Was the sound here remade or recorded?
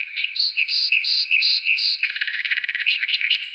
remade